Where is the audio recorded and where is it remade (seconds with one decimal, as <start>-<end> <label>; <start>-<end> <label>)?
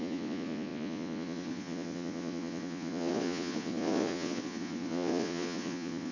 0.0-6.1 remade